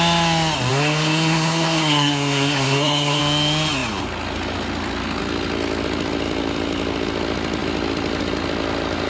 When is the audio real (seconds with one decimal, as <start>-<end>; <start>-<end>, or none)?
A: 0.0-0.7; 3.2-9.1